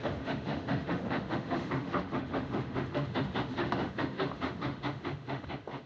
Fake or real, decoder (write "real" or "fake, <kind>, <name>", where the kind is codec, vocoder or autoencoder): fake, autoencoder, DAC-VAE